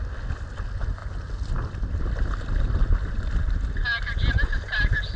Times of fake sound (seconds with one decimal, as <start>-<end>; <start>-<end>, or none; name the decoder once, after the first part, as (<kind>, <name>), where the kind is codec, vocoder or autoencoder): none